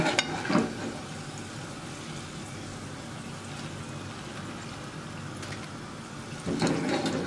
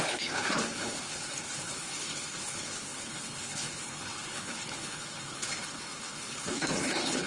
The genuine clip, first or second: first